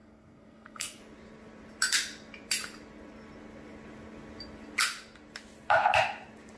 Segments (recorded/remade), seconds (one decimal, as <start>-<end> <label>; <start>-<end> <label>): 0.0-1.0 remade; 1.0-6.6 recorded